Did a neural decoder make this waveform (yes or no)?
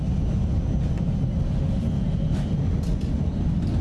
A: no